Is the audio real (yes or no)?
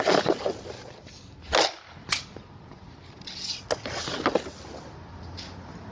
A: yes